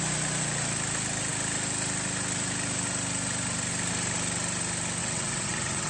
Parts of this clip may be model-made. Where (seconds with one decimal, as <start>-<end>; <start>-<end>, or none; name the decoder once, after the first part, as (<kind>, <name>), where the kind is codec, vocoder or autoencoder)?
5.0-5.9 (vocoder, WaveNeXt)